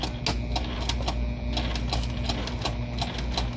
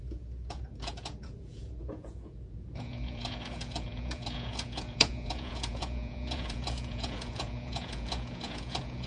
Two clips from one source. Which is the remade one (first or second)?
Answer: second